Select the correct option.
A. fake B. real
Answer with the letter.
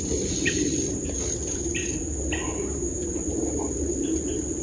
B